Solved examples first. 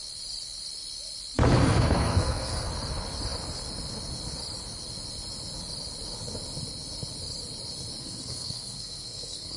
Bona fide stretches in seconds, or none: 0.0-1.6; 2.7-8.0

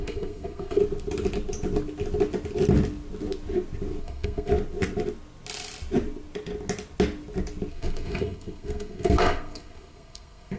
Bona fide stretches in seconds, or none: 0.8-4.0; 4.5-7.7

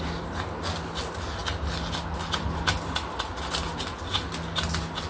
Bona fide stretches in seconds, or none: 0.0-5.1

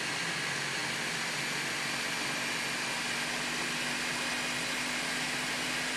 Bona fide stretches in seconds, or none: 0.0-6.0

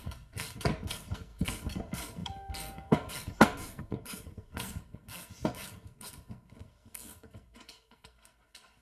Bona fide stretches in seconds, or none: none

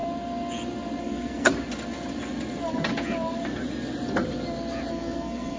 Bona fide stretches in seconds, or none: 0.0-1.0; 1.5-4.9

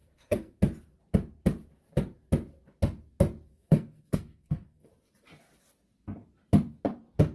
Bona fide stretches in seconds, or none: 0.6-3.5; 4.9-7.3

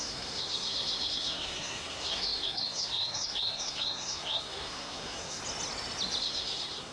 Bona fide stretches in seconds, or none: 5.4-6.2